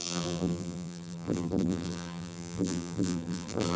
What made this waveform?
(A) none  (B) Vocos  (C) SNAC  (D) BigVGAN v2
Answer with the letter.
D